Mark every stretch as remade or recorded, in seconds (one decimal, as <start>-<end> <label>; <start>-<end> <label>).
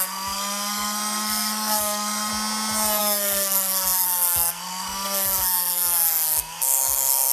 0.0-2.3 remade; 2.3-3.0 recorded; 3.0-7.3 remade